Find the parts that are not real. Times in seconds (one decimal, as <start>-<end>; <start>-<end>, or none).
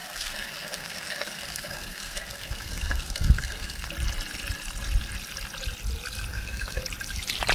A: 0.0-3.9; 6.3-6.8